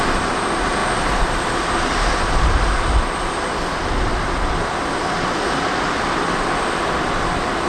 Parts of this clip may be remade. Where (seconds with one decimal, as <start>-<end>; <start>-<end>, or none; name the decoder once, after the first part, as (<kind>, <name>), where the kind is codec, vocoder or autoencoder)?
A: none